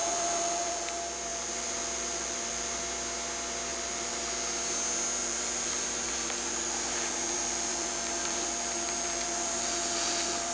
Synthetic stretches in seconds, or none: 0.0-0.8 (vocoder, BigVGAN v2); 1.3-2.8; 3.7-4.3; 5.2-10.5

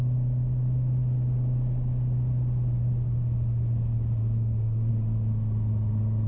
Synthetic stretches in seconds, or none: 4.2-4.9 (codec, SNAC)